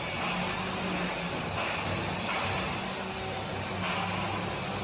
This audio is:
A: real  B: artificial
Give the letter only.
A